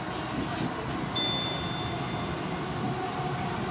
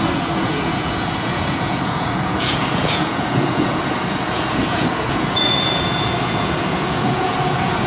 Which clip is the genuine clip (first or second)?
first